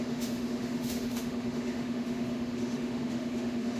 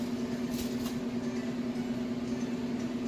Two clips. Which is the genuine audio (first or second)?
second